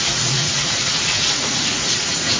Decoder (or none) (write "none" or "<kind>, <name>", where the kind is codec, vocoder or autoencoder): vocoder, Vocos